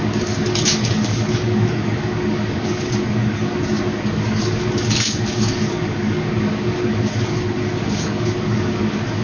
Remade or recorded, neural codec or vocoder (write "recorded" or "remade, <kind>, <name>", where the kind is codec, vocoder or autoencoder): remade, codec, DAC